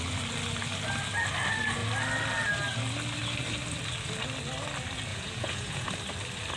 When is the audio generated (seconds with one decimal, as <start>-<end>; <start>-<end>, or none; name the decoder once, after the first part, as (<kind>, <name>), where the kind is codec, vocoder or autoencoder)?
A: 5.1-5.9 (vocoder, Vocos)